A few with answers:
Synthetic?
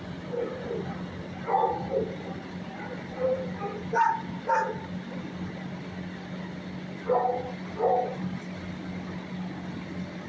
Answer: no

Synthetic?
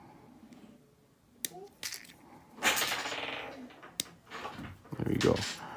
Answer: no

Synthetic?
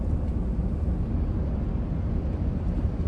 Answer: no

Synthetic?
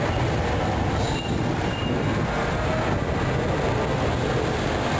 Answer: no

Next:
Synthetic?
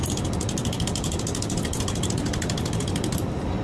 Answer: no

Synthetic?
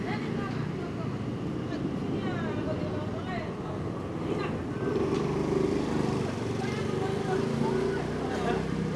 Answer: no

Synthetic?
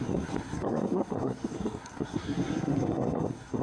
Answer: yes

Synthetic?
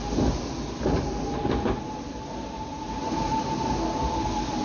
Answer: no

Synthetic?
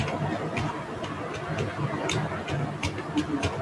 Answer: no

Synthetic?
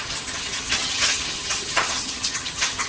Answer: yes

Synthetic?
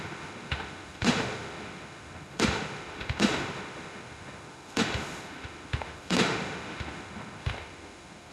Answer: yes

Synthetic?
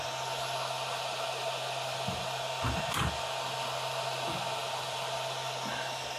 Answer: no